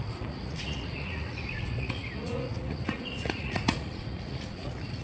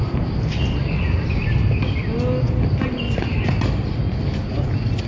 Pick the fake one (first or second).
first